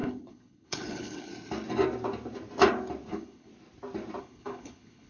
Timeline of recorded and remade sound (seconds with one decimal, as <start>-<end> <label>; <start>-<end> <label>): 0.0-1.3 remade; 1.3-3.1 recorded; 3.1-3.5 remade; 3.5-4.2 recorded; 4.2-5.1 remade